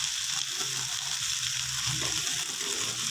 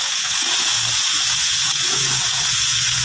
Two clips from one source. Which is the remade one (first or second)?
second